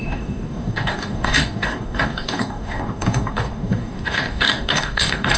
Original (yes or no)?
no